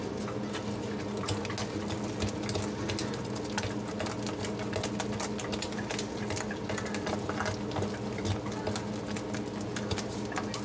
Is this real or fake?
real